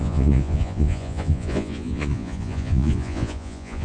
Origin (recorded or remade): remade